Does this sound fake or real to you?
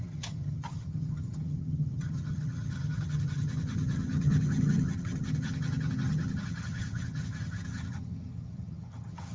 fake